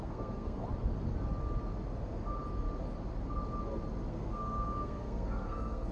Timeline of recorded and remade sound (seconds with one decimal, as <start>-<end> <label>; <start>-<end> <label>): 0.0-0.6 remade; 0.6-4.1 recorded; 4.1-5.9 remade